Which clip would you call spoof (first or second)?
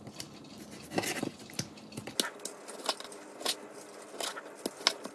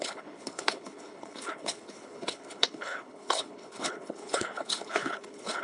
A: second